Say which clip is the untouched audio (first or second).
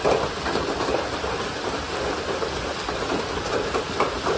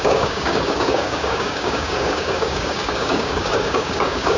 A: first